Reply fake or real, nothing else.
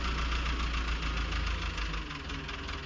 real